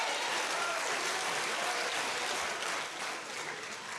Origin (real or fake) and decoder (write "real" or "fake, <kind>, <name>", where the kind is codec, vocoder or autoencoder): real